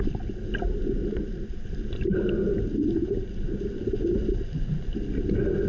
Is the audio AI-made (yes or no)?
no